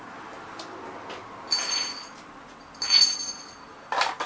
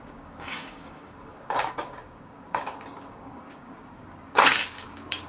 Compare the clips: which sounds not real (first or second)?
second